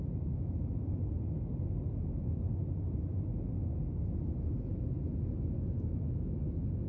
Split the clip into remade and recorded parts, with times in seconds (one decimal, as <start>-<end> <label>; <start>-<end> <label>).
0.0-1.5 remade; 1.5-5.6 recorded; 5.6-6.9 remade